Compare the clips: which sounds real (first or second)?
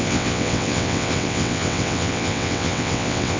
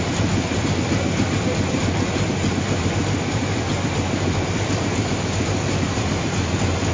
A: second